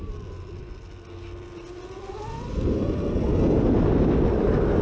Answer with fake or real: real